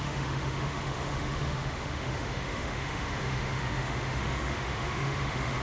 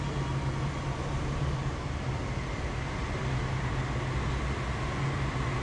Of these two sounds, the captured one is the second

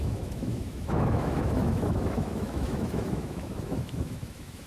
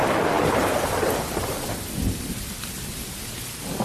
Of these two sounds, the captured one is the second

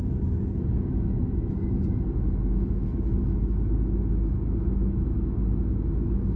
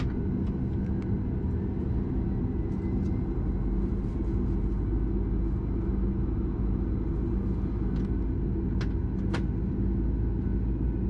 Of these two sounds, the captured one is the second